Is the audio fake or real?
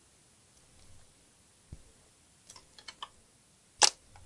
real